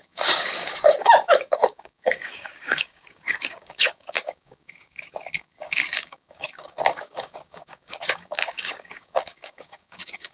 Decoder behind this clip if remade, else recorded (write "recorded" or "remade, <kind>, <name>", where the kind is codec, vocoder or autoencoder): remade, codec, DAC